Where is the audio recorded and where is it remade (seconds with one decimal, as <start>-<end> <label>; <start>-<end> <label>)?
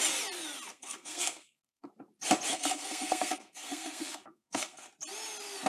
0.0-0.7 recorded; 0.7-1.9 remade; 1.9-2.5 recorded; 2.5-4.9 remade; 4.9-5.7 recorded